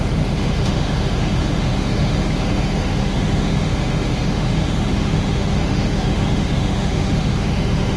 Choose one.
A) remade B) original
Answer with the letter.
A